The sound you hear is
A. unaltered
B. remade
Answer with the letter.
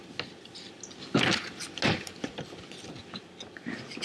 A